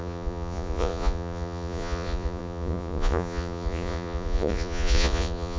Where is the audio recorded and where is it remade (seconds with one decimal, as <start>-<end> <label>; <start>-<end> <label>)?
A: 0.0-5.6 remade